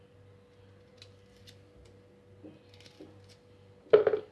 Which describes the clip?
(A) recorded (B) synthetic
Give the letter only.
A